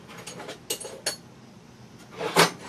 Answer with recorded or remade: recorded